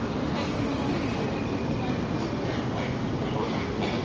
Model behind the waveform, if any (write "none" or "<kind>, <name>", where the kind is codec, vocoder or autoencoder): none